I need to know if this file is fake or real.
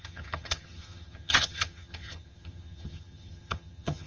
fake